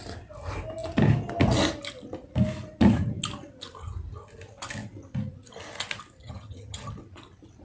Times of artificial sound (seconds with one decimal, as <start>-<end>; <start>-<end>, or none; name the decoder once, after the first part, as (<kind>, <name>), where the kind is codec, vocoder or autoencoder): 6.2-6.9 (vocoder, HiFi-GAN)